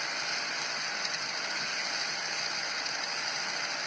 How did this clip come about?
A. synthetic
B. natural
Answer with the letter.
B